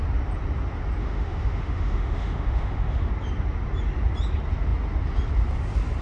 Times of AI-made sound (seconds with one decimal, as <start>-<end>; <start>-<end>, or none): 1.0-3.1